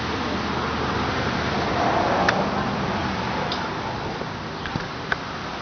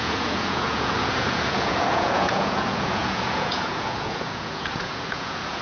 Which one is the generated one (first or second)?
second